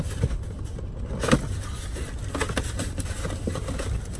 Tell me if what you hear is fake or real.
real